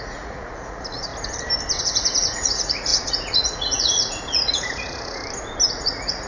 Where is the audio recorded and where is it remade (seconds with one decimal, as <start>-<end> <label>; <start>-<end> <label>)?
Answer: 0.0-1.1 remade; 1.1-1.8 recorded; 1.8-5.2 remade; 5.2-5.7 recorded; 5.7-6.3 remade